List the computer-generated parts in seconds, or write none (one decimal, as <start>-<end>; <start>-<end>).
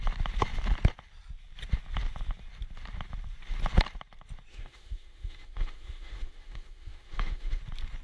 4.5-7.6